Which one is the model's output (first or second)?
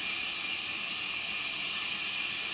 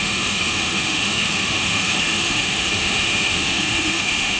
second